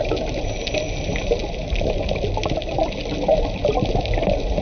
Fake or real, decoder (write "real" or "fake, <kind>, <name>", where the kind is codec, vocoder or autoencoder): real